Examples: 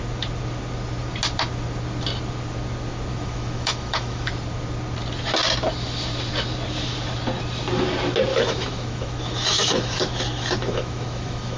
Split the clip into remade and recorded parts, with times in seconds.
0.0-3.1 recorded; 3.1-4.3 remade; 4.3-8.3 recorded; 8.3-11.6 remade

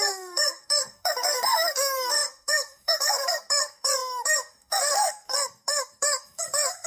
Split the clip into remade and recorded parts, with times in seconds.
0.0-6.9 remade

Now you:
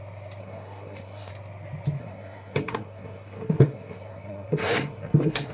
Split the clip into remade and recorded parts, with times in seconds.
0.0-0.4 recorded; 0.4-1.3 remade; 1.3-2.0 recorded; 2.0-5.5 remade

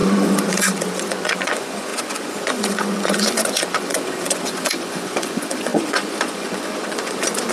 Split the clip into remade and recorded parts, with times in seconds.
0.0-7.5 remade

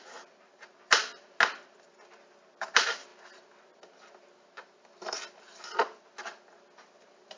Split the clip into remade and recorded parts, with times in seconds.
0.0-7.4 recorded

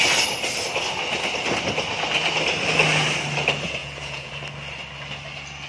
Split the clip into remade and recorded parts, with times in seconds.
0.0-3.8 recorded; 3.8-4.3 remade; 4.3-5.7 recorded

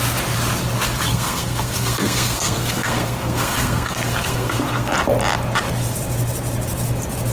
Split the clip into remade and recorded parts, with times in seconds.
0.0-1.1 recorded; 1.1-4.9 remade; 4.9-7.3 recorded